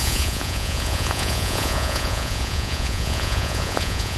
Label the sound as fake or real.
fake